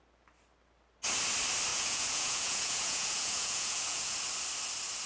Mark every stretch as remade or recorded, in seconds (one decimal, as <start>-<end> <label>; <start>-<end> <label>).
0.0-1.7 recorded; 1.7-4.1 remade; 4.1-5.1 recorded